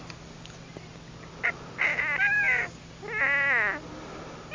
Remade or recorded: recorded